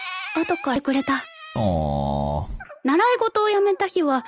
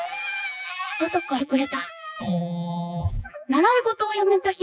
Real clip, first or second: first